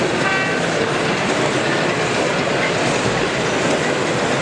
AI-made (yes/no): no